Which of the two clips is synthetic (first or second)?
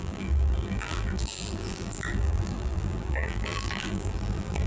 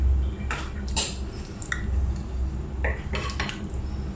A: first